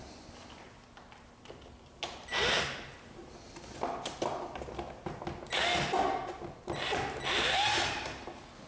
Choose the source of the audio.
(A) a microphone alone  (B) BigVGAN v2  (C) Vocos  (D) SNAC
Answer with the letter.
A